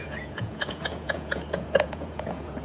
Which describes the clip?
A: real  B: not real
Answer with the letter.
B